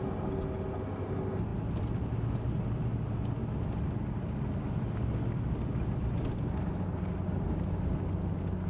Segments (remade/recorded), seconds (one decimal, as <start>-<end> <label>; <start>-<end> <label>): 0.0-8.7 recorded